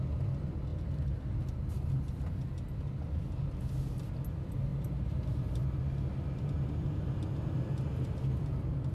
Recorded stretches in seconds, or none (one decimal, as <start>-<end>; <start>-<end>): 0.0-4.7; 5.8-8.9